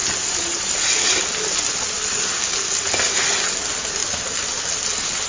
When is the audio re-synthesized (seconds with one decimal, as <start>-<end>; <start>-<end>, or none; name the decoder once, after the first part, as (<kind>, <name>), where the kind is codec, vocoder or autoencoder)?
none